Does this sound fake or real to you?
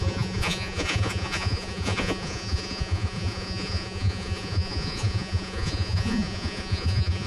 fake